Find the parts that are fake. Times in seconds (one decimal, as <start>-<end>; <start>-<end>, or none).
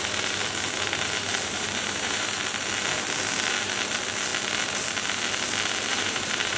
1.3-2.3; 5.9-6.6